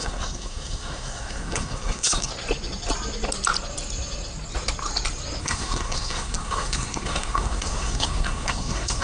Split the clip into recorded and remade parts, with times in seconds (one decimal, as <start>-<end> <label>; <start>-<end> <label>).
0.0-2.3 remade; 2.3-5.4 recorded; 5.4-9.0 remade